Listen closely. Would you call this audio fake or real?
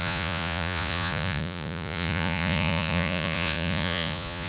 fake